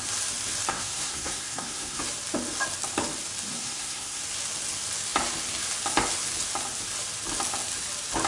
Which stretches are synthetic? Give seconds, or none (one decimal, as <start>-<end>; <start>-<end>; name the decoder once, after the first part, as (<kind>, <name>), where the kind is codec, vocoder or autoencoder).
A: 0.7-2.0 (codec, SNAC); 3.5-4.2